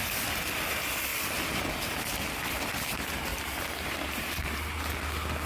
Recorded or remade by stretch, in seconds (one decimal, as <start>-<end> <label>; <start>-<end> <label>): 0.0-3.3 recorded; 3.3-4.9 remade; 4.9-5.5 recorded